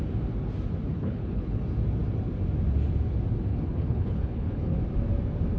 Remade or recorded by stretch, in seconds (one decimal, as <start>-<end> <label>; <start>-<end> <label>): 0.0-0.9 recorded; 0.9-1.6 remade; 1.6-3.5 recorded; 3.5-4.8 remade; 4.8-5.6 recorded

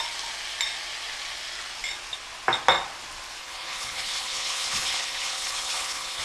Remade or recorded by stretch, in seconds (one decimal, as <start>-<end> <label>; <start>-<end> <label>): 0.0-3.4 recorded; 3.4-6.2 remade

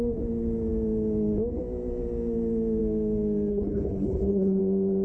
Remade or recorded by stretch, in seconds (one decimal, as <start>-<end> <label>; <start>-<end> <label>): 0.0-3.5 recorded; 3.5-4.6 remade; 4.6-5.0 recorded

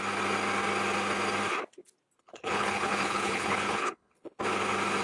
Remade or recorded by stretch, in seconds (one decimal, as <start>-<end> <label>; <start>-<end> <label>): 0.0-2.2 recorded; 2.2-4.4 remade; 4.4-5.0 recorded

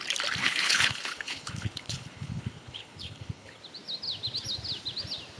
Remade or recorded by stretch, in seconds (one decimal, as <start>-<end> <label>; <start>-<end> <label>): 0.0-0.4 recorded; 0.4-3.6 remade; 3.6-5.4 recorded

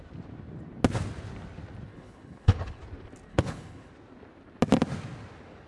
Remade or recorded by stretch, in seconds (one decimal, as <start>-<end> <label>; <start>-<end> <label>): 0.0-1.9 recorded; 1.9-2.8 remade; 2.8-3.3 recorded; 3.3-3.9 remade; 3.9-5.7 recorded